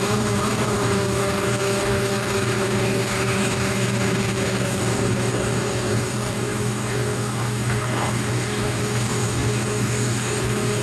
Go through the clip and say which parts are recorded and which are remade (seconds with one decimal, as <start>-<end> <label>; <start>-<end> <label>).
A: 0.0-10.8 remade